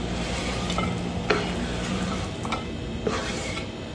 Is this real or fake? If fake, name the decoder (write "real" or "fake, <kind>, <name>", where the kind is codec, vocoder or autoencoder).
real